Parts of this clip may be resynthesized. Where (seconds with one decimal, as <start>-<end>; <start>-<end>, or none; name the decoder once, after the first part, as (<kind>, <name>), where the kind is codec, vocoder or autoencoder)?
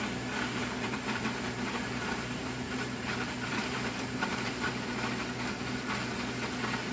0.6-4.7 (vocoder, BigVGAN v2)